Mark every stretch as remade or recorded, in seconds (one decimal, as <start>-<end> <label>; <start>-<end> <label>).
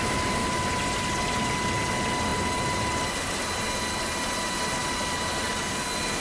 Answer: 0.0-6.2 recorded